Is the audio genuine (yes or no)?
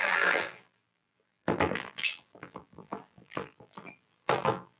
no